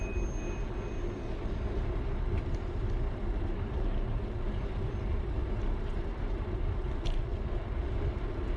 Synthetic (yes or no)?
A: no